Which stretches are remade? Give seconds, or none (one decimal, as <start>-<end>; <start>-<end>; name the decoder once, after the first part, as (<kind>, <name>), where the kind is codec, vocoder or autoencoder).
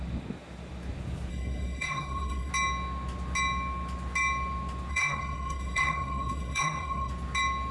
1.3-2.5 (codec, SNAC); 4.9-7.1